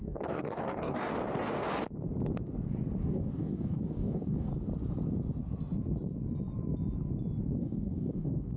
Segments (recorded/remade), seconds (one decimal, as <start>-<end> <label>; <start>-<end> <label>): 0.0-1.1 remade; 1.1-3.0 recorded; 3.0-4.5 remade; 4.5-7.6 recorded; 7.6-8.6 remade